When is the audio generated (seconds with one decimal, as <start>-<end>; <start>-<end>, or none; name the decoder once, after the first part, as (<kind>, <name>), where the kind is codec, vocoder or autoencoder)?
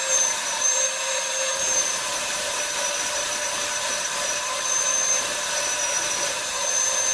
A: 0.0-7.1 (vocoder, BigVGAN v2)